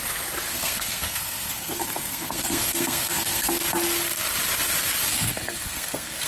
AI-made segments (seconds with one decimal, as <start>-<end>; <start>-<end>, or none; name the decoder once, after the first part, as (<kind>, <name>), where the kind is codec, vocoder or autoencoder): 0.5-3.6 (codec, SNAC); 5.1-6.3